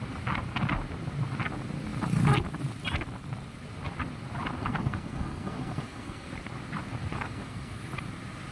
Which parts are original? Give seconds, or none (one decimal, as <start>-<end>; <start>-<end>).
0.0-4.6; 6.3-7.1; 7.8-8.5